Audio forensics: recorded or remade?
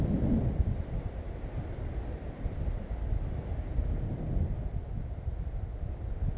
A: recorded